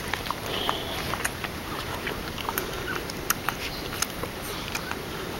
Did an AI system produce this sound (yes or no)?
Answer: yes